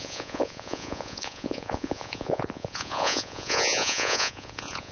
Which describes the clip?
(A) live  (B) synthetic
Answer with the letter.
B